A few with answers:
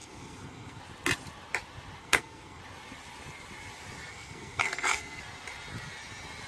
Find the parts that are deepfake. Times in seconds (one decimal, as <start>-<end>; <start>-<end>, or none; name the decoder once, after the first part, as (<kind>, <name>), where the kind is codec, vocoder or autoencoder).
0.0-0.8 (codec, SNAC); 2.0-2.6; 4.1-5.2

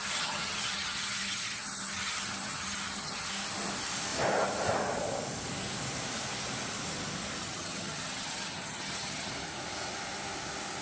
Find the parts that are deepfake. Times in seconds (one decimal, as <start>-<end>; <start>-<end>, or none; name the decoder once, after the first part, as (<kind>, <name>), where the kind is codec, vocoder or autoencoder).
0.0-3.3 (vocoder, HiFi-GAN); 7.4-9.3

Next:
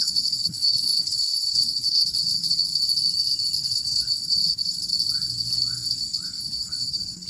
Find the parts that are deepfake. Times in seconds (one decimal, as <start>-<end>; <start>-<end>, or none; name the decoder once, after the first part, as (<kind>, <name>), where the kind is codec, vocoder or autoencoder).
0.0-2.7 (codec, HILCodec); 3.6-4.9; 6.4-7.3

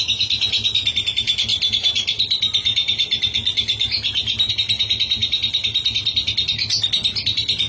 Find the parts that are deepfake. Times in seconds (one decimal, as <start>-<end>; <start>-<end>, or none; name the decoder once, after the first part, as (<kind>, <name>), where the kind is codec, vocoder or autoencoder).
none

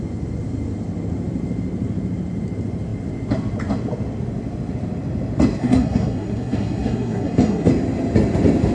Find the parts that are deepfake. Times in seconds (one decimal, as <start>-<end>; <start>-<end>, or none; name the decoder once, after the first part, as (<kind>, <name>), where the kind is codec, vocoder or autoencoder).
5.6-7.7 (codec, SNAC)

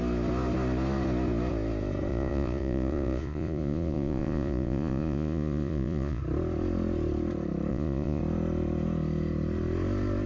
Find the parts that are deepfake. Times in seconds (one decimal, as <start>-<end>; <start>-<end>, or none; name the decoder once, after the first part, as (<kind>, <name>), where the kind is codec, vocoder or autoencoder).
2.1-6.2 (vocoder, Vocos); 7.7-8.2

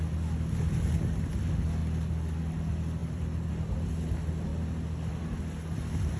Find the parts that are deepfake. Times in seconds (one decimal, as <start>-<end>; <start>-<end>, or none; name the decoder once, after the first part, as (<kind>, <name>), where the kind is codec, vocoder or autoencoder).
3.0-3.5 (vocoder, BigVGAN v2)

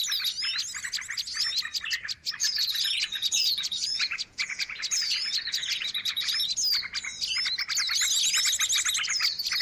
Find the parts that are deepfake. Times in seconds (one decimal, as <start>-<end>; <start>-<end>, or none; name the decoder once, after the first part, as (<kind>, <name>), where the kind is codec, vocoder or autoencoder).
2.4-6.3 (vocoder, Vocos)